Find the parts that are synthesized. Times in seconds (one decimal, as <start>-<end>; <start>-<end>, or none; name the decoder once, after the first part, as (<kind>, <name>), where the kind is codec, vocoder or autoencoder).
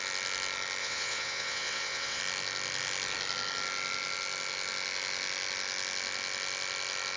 0.8-2.2 (vocoder, WaveNeXt)